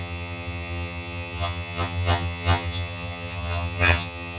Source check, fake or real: fake